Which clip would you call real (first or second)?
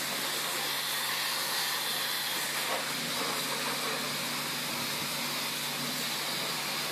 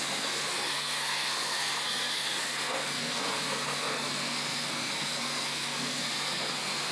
first